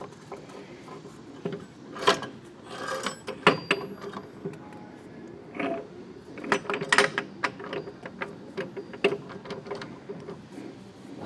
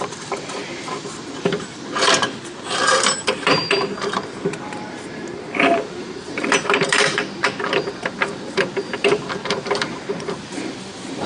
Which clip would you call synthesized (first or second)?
second